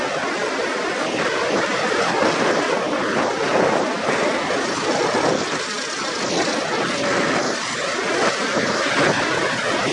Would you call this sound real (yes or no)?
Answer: yes